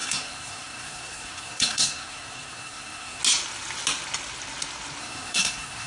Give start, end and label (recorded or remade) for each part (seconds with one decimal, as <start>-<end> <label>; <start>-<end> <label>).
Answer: 0.0-3.2 remade; 3.2-5.0 recorded; 5.0-5.9 remade